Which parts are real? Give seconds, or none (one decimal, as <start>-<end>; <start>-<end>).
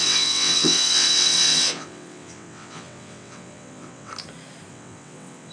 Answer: 4.1-4.7